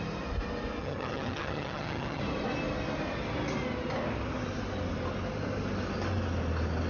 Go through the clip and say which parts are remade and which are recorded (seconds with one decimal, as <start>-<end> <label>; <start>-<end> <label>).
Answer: 0.0-0.8 recorded; 0.8-2.2 remade; 2.2-6.9 recorded